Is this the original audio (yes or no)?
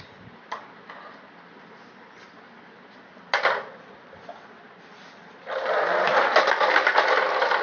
yes